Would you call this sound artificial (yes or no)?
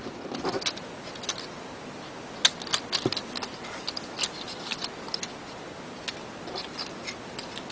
no